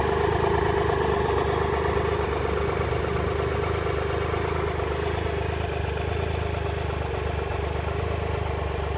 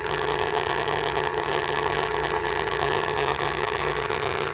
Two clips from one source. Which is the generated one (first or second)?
second